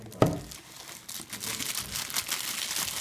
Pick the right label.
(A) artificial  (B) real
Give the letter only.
B